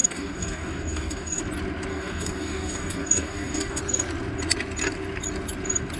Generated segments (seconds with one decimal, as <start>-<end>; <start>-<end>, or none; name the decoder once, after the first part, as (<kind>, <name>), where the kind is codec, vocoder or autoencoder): 0.0-1.4 (codec, DAC); 1.9-3.8